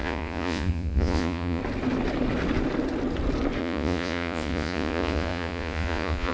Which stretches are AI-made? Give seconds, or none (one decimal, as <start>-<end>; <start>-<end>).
0.0-1.6; 3.6-6.3